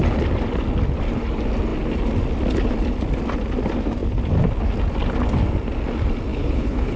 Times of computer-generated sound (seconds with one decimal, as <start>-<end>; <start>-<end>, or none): 6.3-7.0